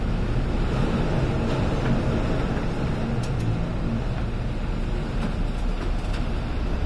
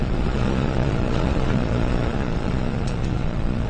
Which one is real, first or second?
first